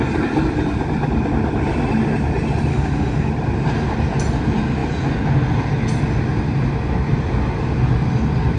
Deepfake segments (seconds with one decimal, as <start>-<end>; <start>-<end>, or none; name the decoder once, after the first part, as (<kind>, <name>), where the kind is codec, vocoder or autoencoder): 2.7-3.3 (autoencoder, DAC-VAE)